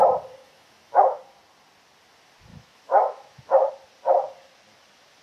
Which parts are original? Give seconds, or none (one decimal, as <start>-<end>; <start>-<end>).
0.0-0.4; 1.2-2.5; 3.7-5.2